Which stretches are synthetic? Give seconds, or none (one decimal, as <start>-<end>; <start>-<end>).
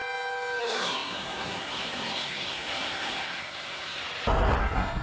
0.6-4.0; 4.6-5.0